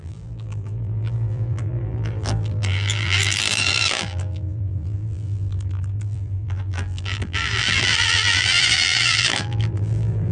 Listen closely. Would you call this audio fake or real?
fake